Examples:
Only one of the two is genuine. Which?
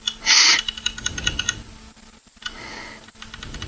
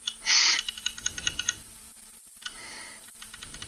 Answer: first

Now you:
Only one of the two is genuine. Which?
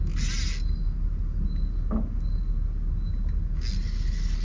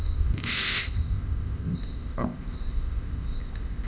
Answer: first